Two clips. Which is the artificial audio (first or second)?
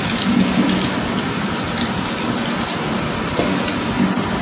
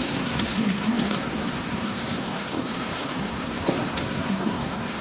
second